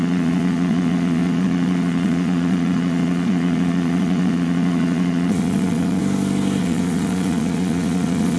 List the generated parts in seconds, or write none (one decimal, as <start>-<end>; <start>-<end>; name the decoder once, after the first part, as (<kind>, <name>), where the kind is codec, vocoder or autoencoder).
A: 0.0-6.0 (vocoder, Vocos); 6.6-8.4